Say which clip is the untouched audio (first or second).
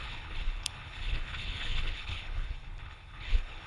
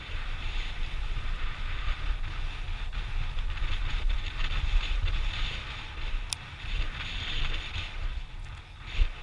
second